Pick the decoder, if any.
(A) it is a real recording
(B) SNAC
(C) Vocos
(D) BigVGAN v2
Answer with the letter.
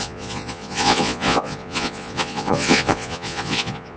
C